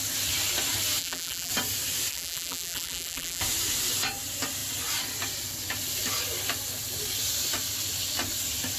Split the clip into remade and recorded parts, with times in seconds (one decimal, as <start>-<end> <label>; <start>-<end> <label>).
0.0-1.0 recorded; 1.0-1.5 remade; 1.5-2.1 recorded; 2.1-3.4 remade; 3.4-8.8 recorded